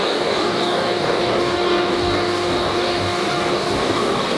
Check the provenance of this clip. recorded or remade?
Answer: remade